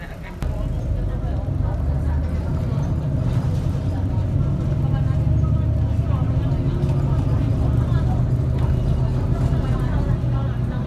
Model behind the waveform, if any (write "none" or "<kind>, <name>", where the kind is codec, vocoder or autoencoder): none